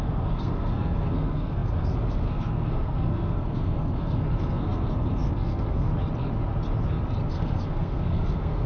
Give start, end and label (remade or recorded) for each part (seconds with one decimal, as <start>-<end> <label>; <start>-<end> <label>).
0.0-5.9 remade; 5.9-7.3 recorded; 7.3-8.7 remade